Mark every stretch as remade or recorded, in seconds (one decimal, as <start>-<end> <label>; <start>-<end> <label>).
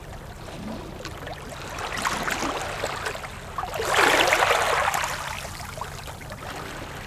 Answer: 0.0-7.1 recorded